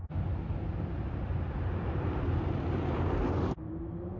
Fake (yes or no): no